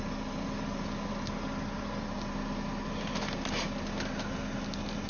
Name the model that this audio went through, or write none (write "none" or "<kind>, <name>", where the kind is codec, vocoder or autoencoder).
none